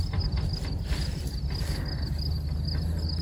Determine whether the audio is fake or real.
real